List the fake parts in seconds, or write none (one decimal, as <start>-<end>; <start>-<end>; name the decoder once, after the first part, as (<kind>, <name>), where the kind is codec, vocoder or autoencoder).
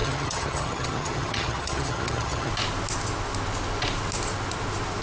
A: 0.0-2.5 (vocoder, HiFi-GAN)